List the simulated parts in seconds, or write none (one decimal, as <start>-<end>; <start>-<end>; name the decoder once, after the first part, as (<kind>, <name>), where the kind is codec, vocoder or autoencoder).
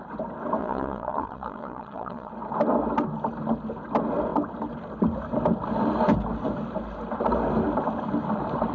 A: 0.6-2.3 (vocoder, Vocos)